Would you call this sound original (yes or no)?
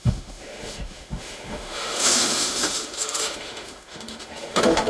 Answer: no